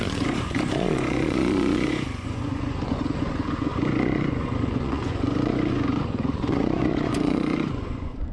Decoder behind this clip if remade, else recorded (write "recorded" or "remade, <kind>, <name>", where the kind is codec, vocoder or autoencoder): remade, vocoder, Vocos